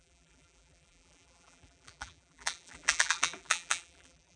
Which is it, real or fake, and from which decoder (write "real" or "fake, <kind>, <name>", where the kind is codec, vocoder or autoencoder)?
fake, vocoder, BigVGAN v2